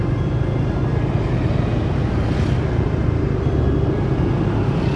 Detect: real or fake real